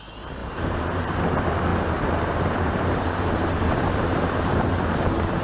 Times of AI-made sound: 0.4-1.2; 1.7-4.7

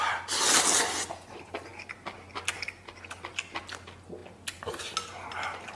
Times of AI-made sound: none

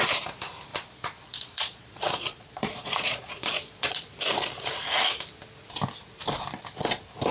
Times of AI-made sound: 0.7-4.1